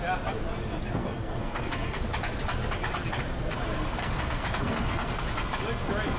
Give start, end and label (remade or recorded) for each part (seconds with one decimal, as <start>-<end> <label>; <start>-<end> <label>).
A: 0.0-1.0 recorded; 1.0-2.0 remade; 2.0-4.0 recorded; 4.0-5.2 remade; 5.2-6.2 recorded